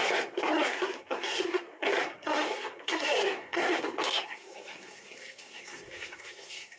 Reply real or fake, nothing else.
fake